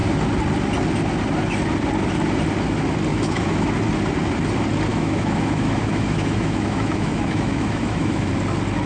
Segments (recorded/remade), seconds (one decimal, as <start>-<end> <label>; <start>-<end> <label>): 0.0-3.1 recorded; 3.1-3.7 remade; 3.7-4.9 recorded; 4.9-8.3 remade; 8.3-8.9 recorded